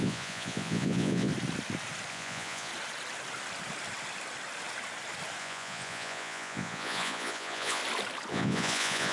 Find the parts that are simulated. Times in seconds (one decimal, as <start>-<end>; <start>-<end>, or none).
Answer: 0.0-1.3; 2.1-2.7; 5.4-7.8; 8.3-9.1